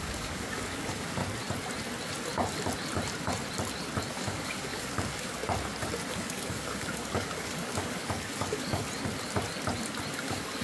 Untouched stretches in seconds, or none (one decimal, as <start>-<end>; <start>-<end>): 1.2-4.1; 5.4-6.1; 8.8-10.1